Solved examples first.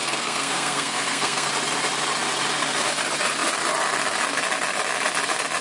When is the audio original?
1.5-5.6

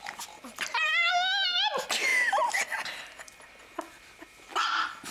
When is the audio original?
0.0-5.1

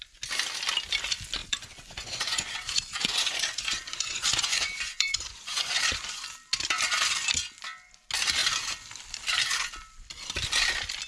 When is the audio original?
0.0-1.4; 6.2-11.1

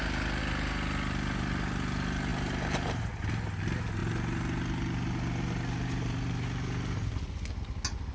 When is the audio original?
0.0-8.1

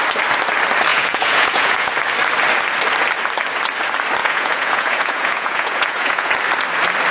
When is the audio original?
0.0-0.9; 1.9-4.2; 6.3-7.1

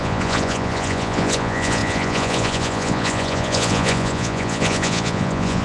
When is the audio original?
none

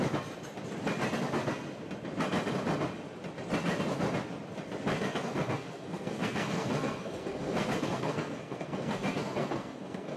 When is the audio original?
0.0-4.9